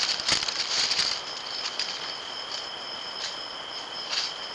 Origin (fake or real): real